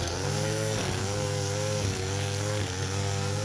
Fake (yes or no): yes